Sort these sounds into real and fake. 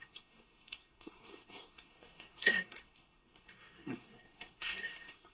fake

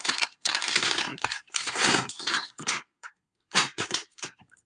fake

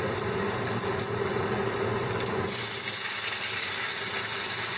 real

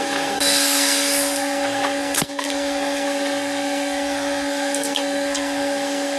fake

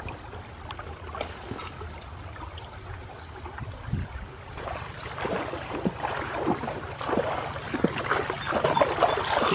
real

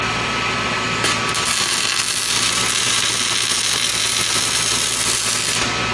real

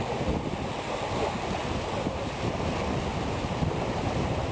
real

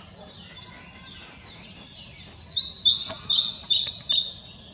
real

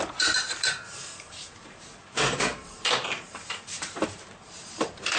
fake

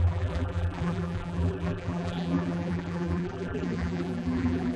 fake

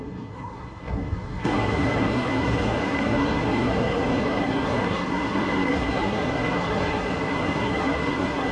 fake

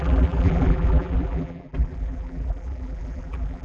fake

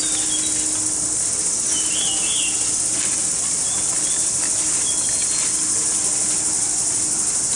real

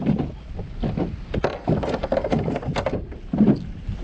real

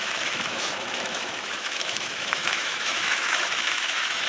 fake